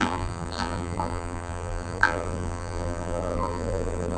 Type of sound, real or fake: fake